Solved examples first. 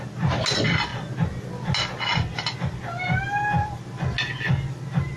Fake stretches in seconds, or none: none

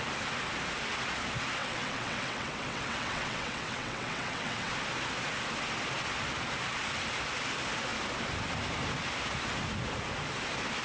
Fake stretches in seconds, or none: 1.6-4.7

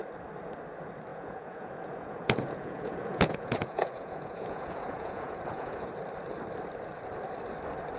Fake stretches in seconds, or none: 1.1-5.9

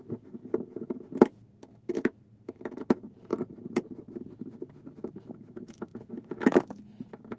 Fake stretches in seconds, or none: 0.0-3.3; 4.0-7.4

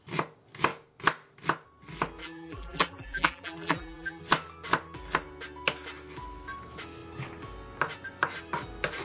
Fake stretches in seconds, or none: 2.2-4.2

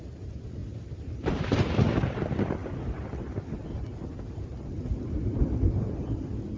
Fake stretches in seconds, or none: none